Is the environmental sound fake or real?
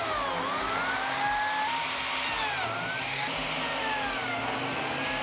real